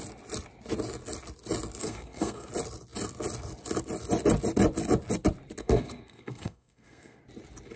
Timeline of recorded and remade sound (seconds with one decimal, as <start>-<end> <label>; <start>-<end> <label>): 0.0-1.8 recorded; 1.8-2.5 remade; 2.5-5.6 recorded; 5.6-7.2 remade; 7.2-7.8 recorded